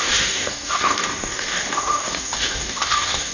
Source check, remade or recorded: remade